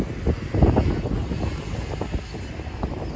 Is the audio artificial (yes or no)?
no